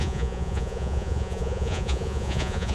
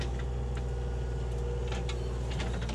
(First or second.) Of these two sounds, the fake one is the first